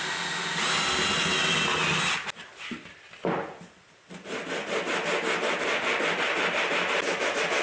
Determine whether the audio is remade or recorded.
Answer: recorded